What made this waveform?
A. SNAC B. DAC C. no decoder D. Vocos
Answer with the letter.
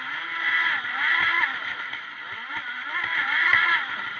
C